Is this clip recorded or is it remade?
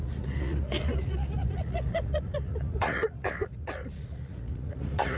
remade